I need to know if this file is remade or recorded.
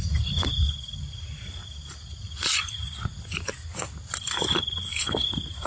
recorded